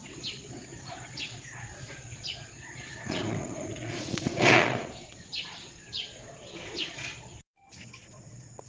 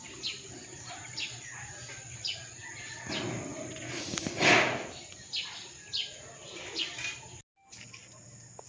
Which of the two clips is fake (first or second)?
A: first